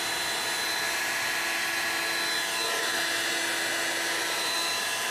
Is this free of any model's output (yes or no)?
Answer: yes